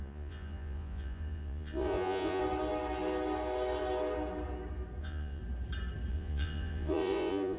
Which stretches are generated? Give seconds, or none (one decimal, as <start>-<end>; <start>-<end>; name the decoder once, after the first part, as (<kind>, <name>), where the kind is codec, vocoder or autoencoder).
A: 0.0-2.4 (vocoder, Vocos); 5.0-5.4; 6.1-7.6